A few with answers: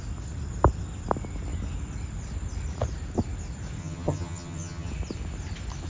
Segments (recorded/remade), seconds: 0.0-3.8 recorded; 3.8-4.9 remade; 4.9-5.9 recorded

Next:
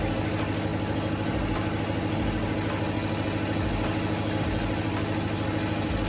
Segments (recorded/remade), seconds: 0.0-6.1 recorded

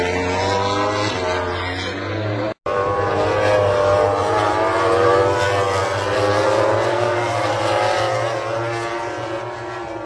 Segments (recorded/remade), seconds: 0.0-6.9 recorded; 6.9-7.5 remade; 7.5-10.1 recorded

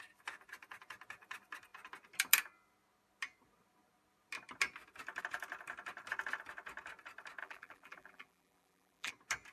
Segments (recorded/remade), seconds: 0.0-7.4 recorded; 7.4-9.1 remade; 9.1-9.5 recorded

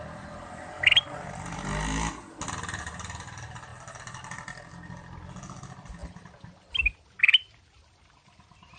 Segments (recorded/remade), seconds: 0.0-8.8 recorded

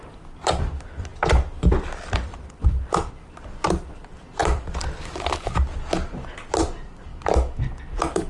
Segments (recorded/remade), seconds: 0.0-2.3 recorded; 2.3-3.1 remade; 3.1-4.4 recorded; 4.4-5.0 remade; 5.0-8.3 recorded